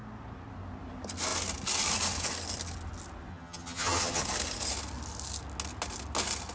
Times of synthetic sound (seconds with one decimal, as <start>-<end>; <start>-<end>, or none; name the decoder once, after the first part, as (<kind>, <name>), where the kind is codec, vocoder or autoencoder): 3.3-4.2 (vocoder, HiFi-GAN)